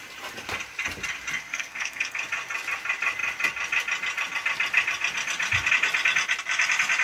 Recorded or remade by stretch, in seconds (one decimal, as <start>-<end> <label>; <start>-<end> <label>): 0.0-1.4 recorded; 1.4-2.2 remade; 2.2-7.0 recorded